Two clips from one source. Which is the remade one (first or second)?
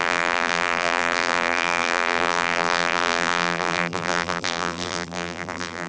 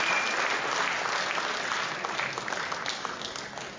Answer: first